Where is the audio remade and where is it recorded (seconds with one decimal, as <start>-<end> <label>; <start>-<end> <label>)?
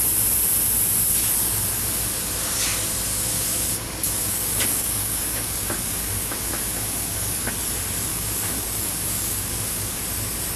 0.0-3.1 recorded; 3.1-7.5 remade; 7.5-8.1 recorded; 8.1-10.0 remade; 10.0-10.6 recorded